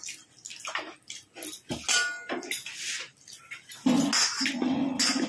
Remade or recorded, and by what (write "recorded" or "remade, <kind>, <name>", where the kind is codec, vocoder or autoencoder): recorded